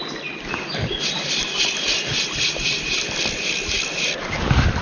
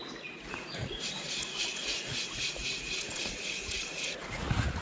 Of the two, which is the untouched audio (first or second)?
first